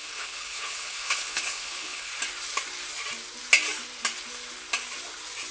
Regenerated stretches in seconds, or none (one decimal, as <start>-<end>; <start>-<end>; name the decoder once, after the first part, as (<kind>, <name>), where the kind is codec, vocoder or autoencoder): 0.0-2.1 (codec, HILCodec)